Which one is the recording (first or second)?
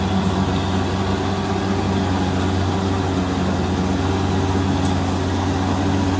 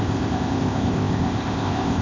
first